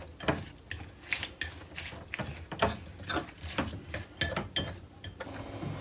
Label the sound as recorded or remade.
recorded